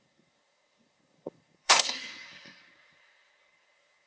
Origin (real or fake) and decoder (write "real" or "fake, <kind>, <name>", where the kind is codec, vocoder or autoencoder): fake, codec, SNAC